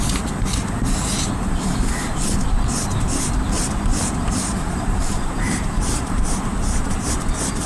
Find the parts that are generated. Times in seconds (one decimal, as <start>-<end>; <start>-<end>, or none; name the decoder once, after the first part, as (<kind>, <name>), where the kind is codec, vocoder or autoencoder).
3.9-7.3 (vocoder, BigVGAN v2)